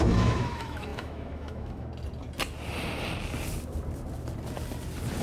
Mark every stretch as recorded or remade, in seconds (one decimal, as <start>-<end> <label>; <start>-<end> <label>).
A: 0.0-1.9 remade; 1.9-5.2 recorded